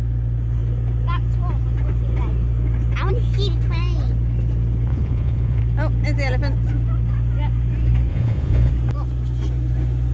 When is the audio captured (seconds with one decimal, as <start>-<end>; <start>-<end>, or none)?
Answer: 0.0-4.9; 5.6-8.1; 8.7-10.1